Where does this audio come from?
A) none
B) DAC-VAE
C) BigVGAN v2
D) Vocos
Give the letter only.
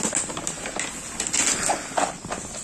A